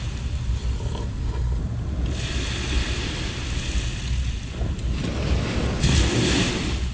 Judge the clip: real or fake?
real